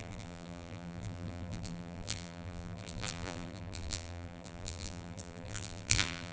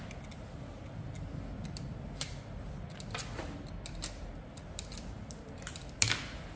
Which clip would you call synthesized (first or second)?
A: first